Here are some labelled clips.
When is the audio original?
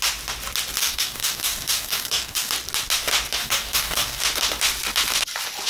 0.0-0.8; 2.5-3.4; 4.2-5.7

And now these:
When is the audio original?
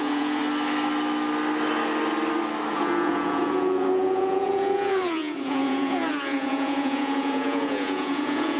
0.4-2.7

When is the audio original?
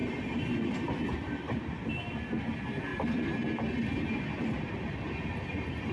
0.0-5.9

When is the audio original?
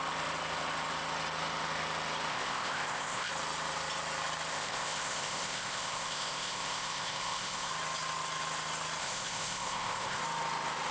0.0-2.3; 3.3-4.5; 7.7-9.0; 10.2-10.9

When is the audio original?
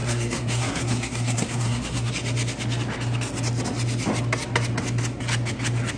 2.1-6.0